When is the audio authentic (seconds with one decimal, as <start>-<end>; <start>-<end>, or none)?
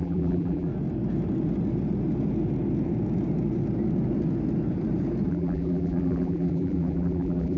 0.7-5.3